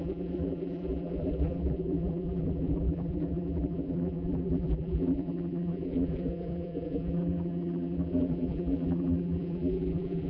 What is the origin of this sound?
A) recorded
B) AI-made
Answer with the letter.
B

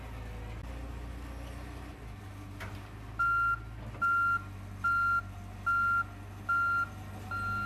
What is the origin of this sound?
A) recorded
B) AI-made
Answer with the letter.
A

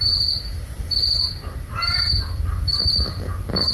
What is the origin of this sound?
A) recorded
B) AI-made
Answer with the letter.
B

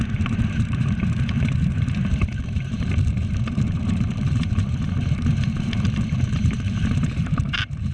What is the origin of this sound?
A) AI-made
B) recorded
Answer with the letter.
A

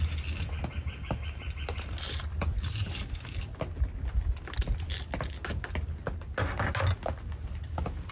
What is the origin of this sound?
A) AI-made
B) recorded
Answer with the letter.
B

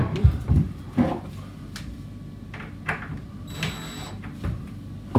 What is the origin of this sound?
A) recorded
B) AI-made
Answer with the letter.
A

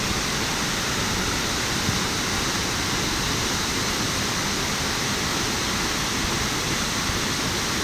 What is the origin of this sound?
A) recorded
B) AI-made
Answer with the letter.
A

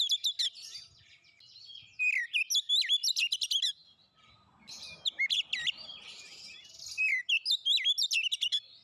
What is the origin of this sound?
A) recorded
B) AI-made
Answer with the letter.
A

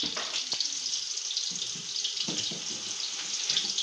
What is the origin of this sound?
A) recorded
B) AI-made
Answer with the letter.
A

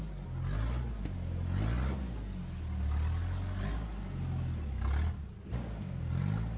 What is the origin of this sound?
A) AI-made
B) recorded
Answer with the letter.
B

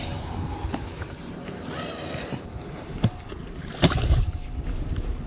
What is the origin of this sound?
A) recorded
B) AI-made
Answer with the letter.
B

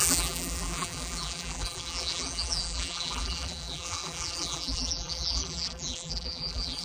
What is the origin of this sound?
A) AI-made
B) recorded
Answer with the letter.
A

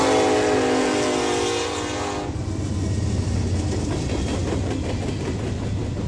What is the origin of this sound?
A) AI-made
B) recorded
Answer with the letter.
B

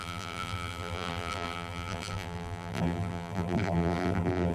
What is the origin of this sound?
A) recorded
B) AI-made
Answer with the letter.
B